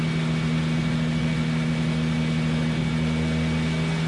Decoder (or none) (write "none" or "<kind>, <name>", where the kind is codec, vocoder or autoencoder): none